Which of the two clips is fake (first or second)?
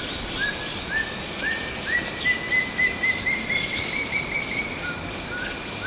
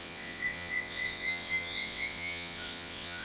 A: second